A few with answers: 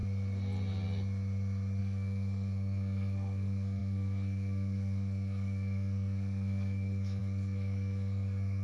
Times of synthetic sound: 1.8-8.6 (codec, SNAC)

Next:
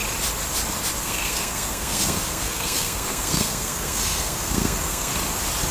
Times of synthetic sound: 1.0-5.1 (codec, SNAC)

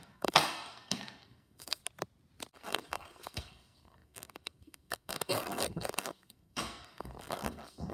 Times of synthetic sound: 0.0-1.8 (codec, SNAC); 2.5-7.9

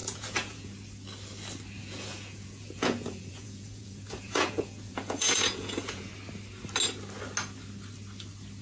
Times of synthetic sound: 0.0-0.7 (vocoder, Vocos); 1.8-6.1

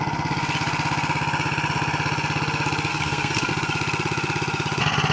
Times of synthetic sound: 2.9-3.5 (codec, SNAC)

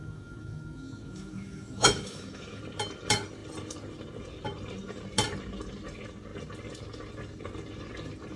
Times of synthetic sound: 0.0-2.6 (autoencoder, DAC-VAE)

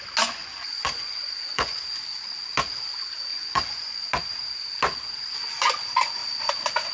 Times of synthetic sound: 0.4-1.8 (vocoder, Vocos); 3.3-4.1

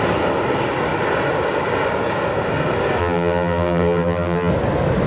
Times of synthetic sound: 3.0-4.5 (vocoder, BigVGAN v2)